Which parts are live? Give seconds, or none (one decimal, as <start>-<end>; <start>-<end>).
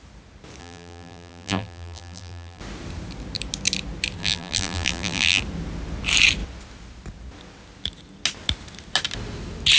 0.0-0.6; 2.6-4.2; 5.4-9.8